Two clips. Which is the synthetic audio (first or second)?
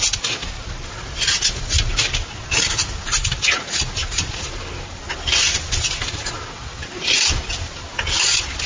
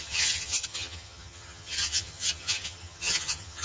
second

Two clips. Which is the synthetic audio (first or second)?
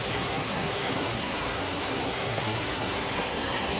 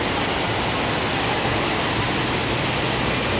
first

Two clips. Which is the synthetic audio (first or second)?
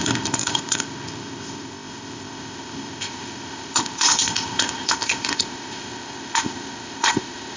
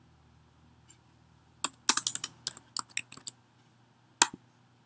first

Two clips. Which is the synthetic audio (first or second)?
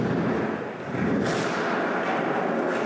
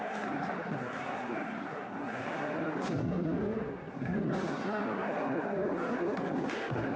second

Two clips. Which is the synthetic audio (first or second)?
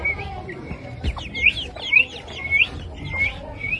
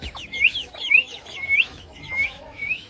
second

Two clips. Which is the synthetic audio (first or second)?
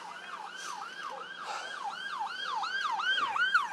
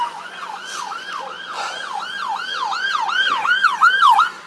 second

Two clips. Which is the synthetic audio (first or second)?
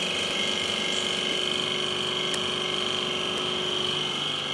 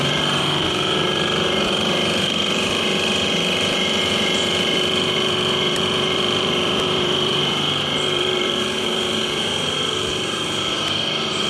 second